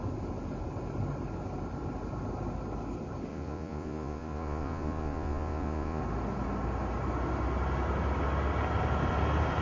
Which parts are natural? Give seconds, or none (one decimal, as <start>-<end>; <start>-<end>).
0.0-3.3; 6.0-9.6